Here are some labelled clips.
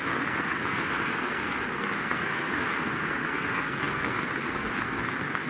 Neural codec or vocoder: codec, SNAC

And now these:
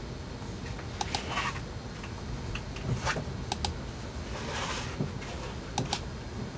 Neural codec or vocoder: none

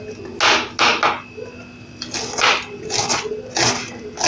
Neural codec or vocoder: none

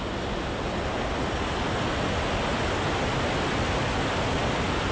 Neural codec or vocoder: none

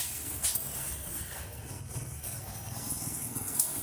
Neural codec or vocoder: codec, SNAC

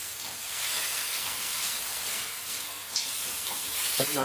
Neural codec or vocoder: codec, SNAC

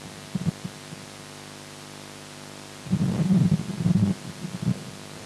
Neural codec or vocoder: none